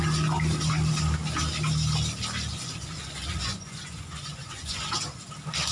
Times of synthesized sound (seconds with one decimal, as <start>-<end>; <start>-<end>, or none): 2.5-4.8